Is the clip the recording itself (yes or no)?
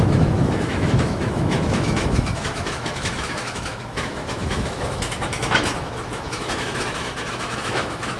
no